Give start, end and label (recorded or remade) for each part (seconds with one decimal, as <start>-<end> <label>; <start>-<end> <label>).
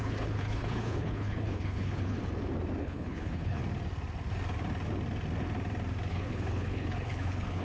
0.0-2.2 remade; 2.2-2.8 recorded; 2.8-3.6 remade; 3.6-6.1 recorded; 6.1-7.6 remade